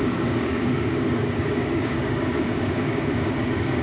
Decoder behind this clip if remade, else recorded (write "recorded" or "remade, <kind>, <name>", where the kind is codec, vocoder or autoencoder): remade, codec, DAC